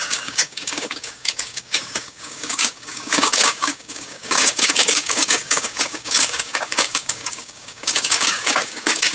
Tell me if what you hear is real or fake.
fake